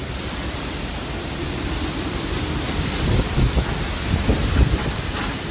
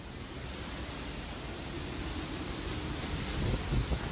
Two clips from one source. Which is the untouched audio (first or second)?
second